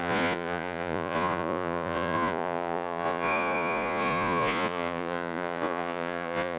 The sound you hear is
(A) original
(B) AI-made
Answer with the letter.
B